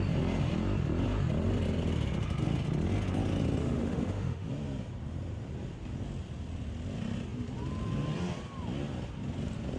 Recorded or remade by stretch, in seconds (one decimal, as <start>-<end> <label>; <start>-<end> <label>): 0.0-3.6 recorded; 3.6-4.5 remade; 4.5-9.8 recorded